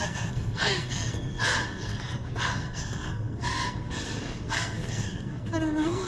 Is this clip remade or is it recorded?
remade